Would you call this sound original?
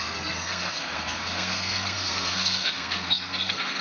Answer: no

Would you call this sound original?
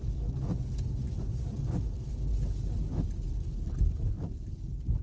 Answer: yes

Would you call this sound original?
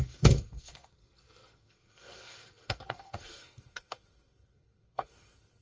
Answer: no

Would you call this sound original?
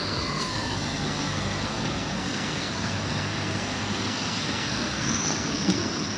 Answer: no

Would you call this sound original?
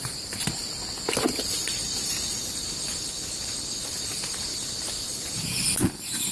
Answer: yes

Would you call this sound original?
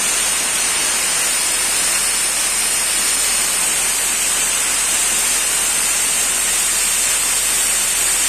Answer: yes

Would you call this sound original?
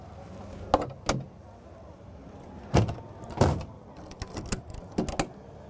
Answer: yes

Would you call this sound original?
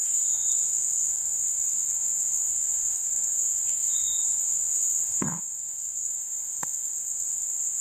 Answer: no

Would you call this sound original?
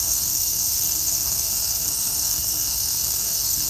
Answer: no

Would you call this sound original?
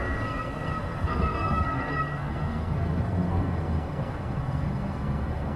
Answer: no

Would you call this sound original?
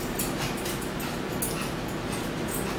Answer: yes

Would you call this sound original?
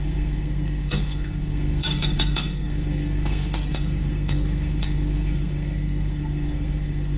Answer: no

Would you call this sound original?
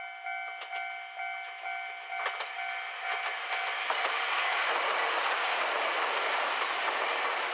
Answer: yes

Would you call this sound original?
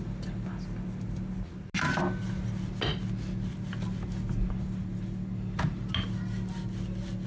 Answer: yes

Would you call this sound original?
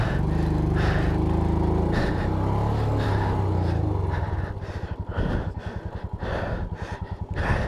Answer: yes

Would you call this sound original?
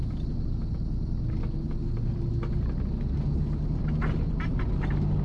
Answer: yes